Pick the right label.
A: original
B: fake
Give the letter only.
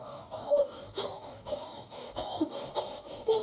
B